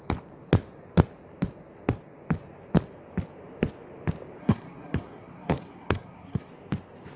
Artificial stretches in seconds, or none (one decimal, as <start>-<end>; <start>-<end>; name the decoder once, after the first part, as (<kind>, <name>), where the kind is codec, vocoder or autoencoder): 4.4-6.5 (codec, SNAC)